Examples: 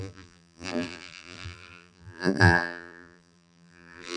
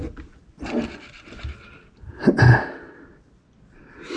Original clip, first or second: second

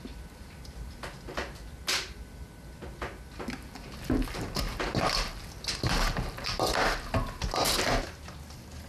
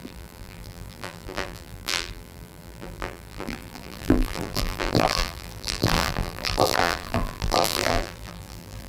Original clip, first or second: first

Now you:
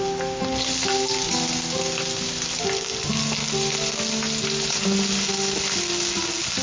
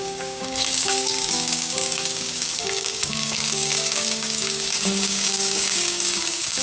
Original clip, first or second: first